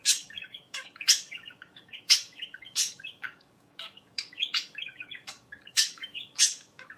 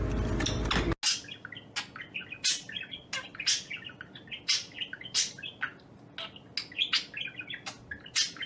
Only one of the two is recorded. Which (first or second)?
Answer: second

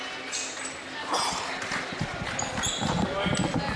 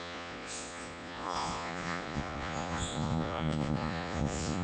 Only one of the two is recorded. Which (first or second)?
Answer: first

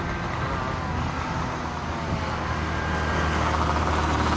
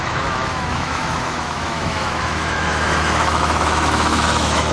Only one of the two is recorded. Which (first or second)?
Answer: first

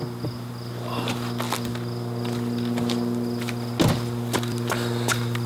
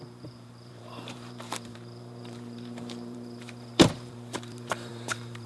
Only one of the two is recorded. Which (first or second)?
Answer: first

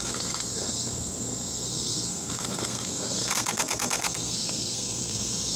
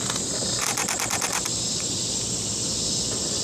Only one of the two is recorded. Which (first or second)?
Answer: second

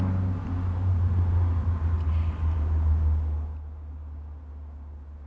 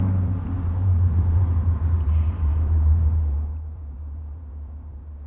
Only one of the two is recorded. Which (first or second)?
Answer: first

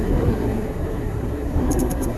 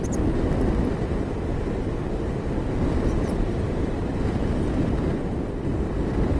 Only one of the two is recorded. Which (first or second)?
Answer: second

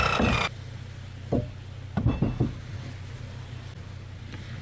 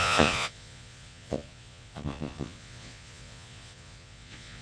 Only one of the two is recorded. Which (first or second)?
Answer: first